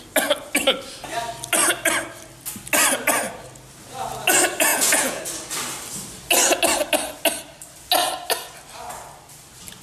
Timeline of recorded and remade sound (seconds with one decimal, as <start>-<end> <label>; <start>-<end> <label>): 0.0-4.7 recorded; 4.7-5.2 remade; 5.2-9.8 recorded